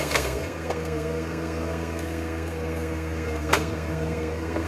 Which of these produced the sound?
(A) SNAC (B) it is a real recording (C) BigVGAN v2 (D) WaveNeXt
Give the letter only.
A